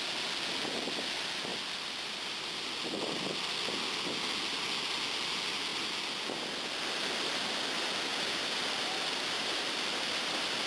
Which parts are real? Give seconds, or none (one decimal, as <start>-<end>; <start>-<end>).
0.0-8.1